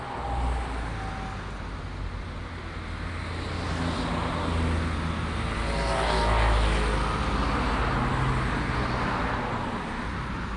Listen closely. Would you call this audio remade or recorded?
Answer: recorded